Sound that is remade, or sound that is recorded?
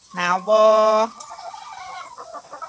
remade